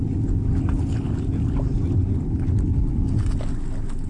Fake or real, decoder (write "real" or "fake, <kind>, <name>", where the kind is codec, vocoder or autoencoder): real